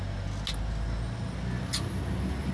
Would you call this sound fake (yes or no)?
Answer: no